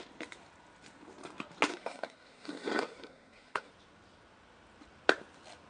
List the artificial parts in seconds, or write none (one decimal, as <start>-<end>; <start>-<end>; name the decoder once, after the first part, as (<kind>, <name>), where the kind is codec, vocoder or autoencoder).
1.7-3.7 (codec, SNAC)